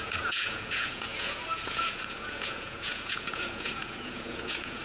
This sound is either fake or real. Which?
fake